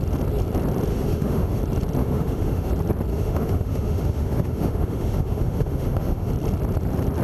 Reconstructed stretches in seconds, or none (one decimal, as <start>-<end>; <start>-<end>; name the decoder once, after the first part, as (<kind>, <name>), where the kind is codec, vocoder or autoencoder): 0.9-1.6 (autoencoder, DAC-VAE); 2.0-2.7; 3.1-6.3